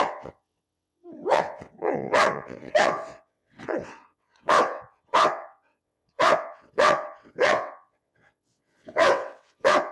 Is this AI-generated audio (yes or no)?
yes